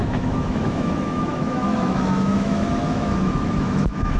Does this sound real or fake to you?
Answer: fake